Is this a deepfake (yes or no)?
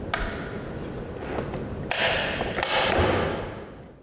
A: no